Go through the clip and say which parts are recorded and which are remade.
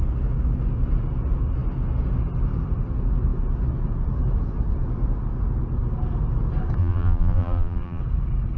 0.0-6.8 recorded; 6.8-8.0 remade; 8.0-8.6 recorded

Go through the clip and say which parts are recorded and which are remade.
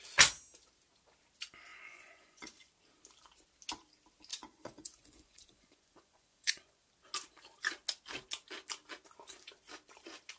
0.0-1.7 recorded; 1.7-2.7 remade; 2.7-4.3 recorded; 4.3-6.9 remade; 6.9-10.4 recorded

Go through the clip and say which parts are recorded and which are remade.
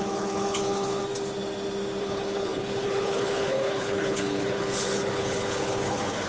0.0-1.0 remade; 1.0-2.0 recorded; 2.0-6.3 remade